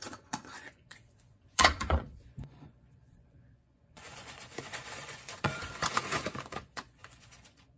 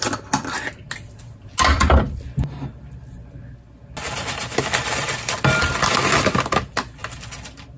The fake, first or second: first